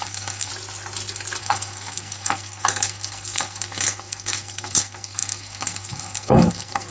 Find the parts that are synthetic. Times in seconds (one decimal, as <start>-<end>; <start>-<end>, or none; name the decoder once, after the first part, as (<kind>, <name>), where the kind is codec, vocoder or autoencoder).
0.0-0.5 (codec, SNAC); 1.4-6.9